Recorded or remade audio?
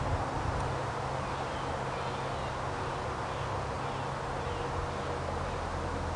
recorded